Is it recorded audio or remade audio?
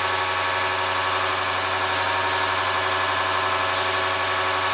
recorded